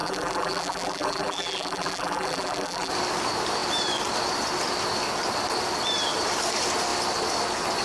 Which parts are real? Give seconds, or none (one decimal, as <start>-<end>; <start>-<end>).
2.9-7.8